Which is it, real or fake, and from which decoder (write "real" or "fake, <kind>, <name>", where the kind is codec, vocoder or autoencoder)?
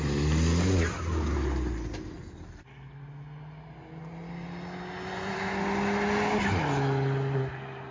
real